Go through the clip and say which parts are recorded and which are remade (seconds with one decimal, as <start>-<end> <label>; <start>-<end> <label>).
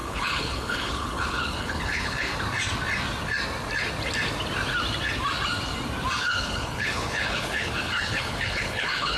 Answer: 0.0-2.3 remade; 2.3-6.2 recorded; 6.2-9.2 remade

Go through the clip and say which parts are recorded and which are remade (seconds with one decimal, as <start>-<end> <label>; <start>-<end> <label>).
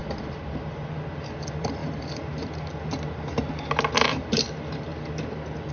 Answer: 0.0-1.1 recorded; 1.1-4.9 remade; 4.9-5.7 recorded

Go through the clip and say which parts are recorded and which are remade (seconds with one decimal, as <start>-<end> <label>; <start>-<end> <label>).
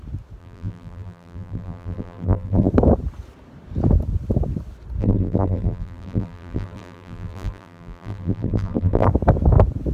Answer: 0.0-0.4 recorded; 0.4-2.7 remade; 2.7-5.0 recorded; 5.0-9.1 remade; 9.1-9.9 recorded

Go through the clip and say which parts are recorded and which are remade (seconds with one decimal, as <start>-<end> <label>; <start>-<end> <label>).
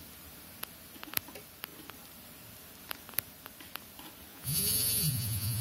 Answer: 0.0-4.3 recorded; 4.3-5.6 remade